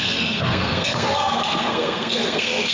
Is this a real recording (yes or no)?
no